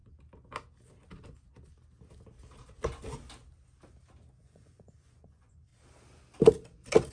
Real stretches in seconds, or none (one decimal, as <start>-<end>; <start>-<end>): 0.0-4.3; 5.7-7.1